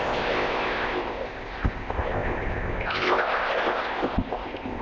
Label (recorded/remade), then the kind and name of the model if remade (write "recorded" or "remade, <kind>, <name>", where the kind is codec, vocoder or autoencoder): remade, codec, ZipCodec